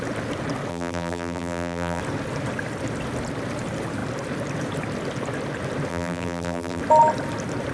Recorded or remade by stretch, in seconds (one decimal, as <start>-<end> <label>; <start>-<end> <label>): 0.0-0.7 recorded; 0.7-2.0 remade; 2.0-5.9 recorded; 5.9-6.8 remade; 6.8-7.7 recorded